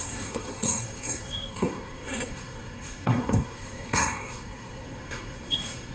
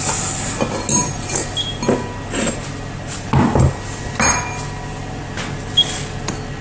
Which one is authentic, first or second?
second